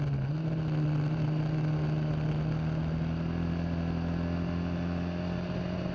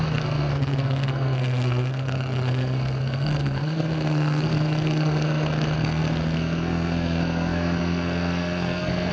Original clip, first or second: first